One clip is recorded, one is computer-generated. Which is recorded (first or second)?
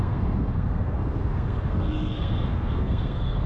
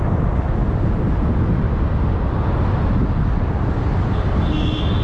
second